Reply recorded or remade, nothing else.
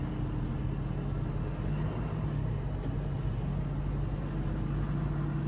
recorded